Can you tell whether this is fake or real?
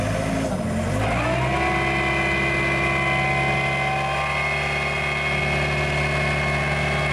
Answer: real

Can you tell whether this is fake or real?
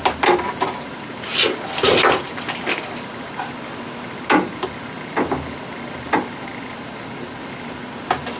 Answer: real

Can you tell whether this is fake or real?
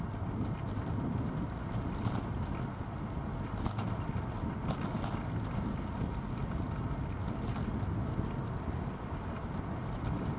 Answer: real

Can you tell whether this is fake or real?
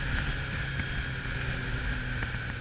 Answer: real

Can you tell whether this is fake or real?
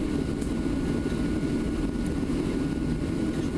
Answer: real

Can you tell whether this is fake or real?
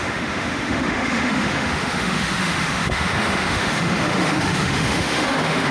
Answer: fake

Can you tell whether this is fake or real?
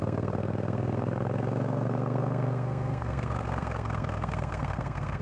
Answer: fake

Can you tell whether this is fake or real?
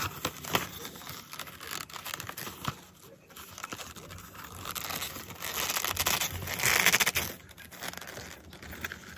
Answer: real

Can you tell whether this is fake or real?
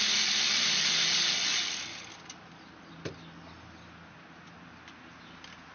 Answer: real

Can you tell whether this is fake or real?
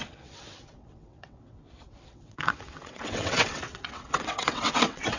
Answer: fake